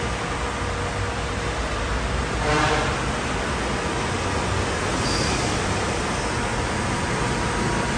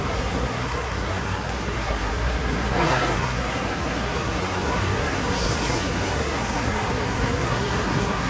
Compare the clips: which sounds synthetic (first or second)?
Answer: second